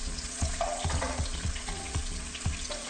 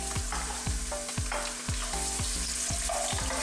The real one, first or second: second